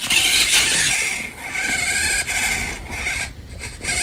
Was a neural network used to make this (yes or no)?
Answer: no